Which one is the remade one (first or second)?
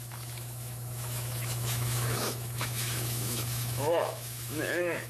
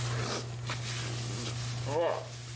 first